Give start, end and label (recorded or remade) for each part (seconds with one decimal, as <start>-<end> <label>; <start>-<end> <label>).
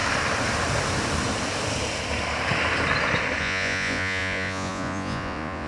0.0-3.4 recorded; 3.4-5.7 remade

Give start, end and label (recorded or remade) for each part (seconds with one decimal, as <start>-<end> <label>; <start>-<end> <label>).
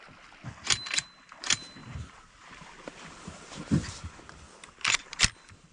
0.0-1.8 recorded; 1.8-5.2 remade; 5.2-5.7 recorded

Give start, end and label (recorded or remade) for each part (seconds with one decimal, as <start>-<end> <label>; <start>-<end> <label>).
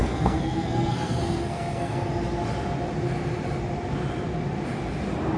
0.0-2.1 remade; 2.1-5.4 recorded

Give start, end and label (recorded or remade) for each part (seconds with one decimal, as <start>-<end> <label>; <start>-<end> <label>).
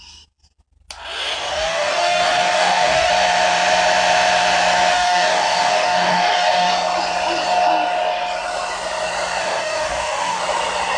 0.0-1.5 recorded; 1.5-3.1 remade; 3.1-4.9 recorded; 4.9-6.7 remade; 6.7-9.4 recorded; 9.4-10.4 remade; 10.4-11.0 recorded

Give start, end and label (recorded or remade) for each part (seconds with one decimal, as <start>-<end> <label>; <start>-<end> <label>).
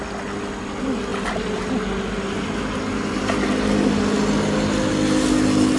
0.0-5.8 recorded